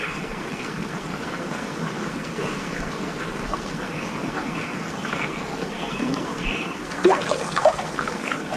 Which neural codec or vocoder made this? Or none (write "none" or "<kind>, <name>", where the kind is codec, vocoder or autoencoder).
codec, SNAC